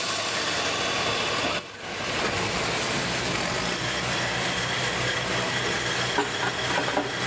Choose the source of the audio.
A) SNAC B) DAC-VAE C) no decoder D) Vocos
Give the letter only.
C